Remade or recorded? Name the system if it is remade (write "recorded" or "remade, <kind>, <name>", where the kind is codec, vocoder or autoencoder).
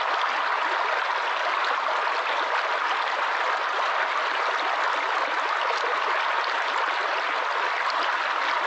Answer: recorded